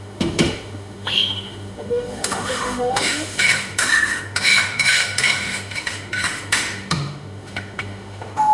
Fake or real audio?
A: fake